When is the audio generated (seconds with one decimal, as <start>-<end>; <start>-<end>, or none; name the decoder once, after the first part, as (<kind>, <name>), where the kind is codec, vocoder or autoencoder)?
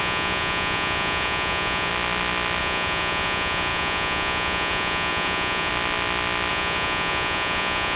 0.0-1.9 (vocoder, Vocos); 2.6-5.7; 6.5-8.0